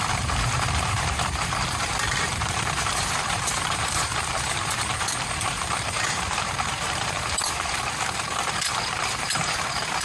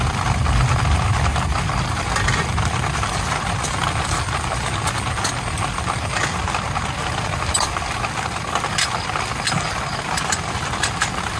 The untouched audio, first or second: second